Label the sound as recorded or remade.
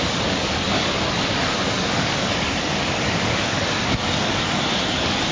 remade